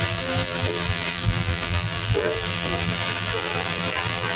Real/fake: fake